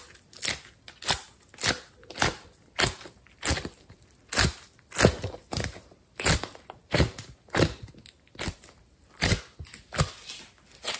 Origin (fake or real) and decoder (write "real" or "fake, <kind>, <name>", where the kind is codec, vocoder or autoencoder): real